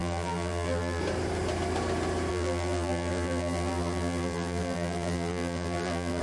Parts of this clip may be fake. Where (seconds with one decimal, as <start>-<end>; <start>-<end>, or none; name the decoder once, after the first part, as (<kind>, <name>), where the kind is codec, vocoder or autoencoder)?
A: 0.0-1.0 (vocoder, BigVGAN v2); 2.3-6.2